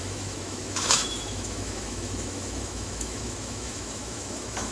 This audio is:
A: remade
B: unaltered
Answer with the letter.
A